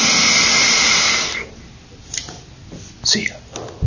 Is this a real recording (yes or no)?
yes